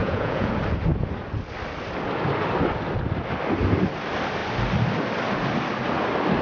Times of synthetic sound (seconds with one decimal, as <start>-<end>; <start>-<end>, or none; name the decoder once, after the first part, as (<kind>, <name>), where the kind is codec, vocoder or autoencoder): 0.0-0.5 (vocoder, Vocos)